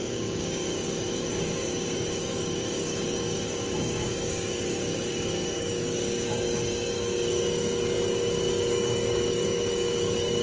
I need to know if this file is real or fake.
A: fake